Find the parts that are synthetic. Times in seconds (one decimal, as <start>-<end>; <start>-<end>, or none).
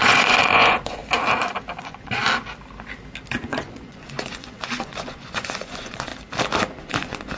0.0-1.0; 1.8-2.2; 3.4-6.1; 6.8-7.4